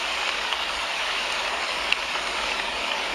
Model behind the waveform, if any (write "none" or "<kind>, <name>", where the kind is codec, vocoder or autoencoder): codec, DAC